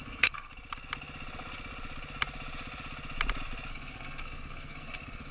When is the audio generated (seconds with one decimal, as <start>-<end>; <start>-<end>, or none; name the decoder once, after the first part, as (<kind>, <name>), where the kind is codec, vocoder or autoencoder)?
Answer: 0.0-0.5 (codec, SNAC); 3.7-5.3